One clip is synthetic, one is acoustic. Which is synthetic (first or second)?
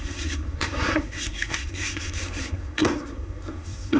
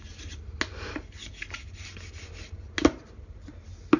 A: first